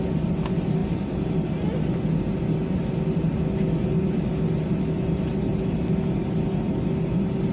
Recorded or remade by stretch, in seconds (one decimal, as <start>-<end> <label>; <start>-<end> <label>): 0.0-7.5 recorded